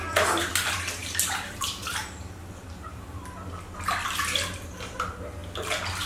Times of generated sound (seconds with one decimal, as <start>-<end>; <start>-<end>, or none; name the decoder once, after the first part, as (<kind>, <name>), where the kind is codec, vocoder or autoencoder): 0.0-0.5 (vocoder, BigVGAN v2); 1.0-3.2